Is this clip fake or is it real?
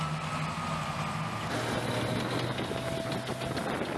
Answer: real